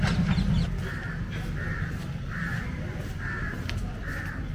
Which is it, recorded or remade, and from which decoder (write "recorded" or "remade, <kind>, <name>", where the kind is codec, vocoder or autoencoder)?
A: recorded